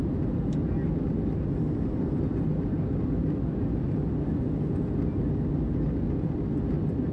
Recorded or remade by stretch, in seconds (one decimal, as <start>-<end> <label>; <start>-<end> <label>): 0.0-7.1 recorded